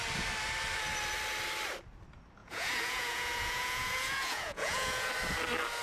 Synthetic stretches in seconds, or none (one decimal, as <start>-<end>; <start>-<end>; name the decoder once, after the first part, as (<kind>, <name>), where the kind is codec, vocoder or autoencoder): 2.4-5.1 (vocoder, Vocos)